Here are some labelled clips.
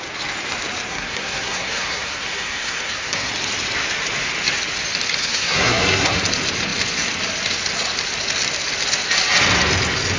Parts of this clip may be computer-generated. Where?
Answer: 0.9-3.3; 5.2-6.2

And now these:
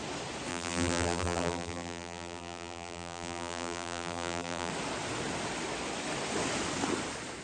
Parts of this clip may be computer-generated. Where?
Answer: 0.5-4.7

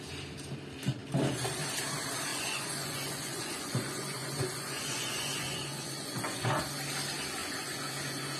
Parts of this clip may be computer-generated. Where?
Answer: 2.3-6.6; 7.4-8.4

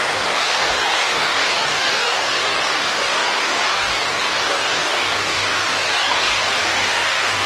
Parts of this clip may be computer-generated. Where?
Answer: 0.0-7.5

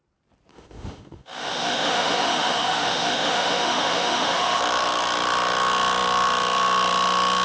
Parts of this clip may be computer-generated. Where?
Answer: 0.5-4.6